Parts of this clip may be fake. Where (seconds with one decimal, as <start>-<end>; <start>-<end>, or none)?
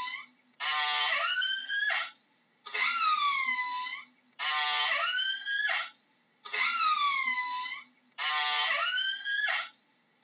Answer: 1.3-1.9